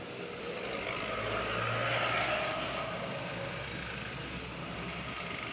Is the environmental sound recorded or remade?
recorded